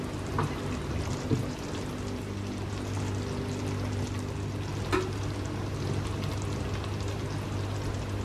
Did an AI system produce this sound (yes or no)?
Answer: no